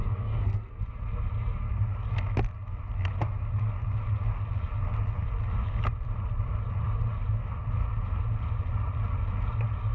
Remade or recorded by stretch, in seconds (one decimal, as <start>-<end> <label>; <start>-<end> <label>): 0.0-0.8 remade; 0.8-9.9 recorded